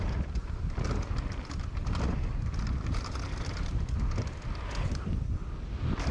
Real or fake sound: fake